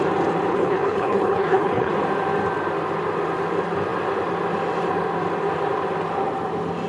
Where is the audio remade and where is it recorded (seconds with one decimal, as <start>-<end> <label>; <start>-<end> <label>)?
0.0-0.5 recorded; 0.5-1.9 remade; 1.9-6.9 recorded